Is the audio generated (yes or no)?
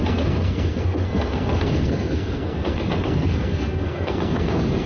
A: yes